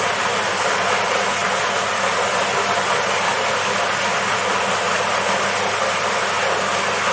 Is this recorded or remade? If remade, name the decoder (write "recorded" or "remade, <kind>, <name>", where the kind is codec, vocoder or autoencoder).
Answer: recorded